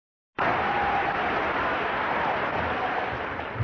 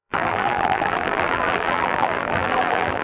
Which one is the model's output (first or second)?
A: second